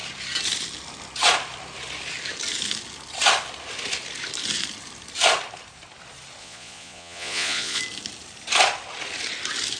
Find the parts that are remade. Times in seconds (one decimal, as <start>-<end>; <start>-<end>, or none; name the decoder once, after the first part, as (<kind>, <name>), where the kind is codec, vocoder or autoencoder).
6.4-7.8 (vocoder, Vocos)